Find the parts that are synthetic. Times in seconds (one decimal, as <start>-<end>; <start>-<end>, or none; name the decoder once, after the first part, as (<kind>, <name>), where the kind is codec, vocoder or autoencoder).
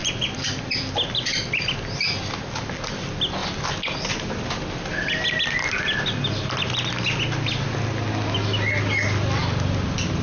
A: 0.0-1.5 (vocoder, BigVGAN v2); 9.4-10.2